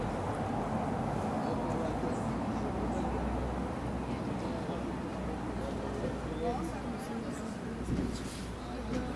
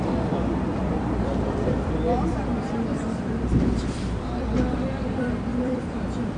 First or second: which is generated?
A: second